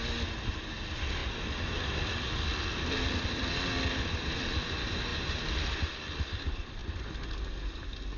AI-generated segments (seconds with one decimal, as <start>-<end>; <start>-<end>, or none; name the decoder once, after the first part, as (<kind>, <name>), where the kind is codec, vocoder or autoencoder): none